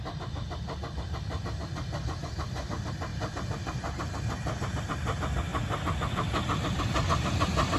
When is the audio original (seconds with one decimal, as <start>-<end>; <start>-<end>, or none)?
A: 0.0-3.1; 4.8-7.8